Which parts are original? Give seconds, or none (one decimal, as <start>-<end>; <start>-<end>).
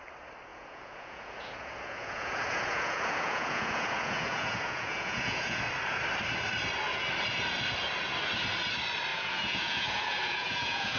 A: 0.0-0.5; 5.6-9.1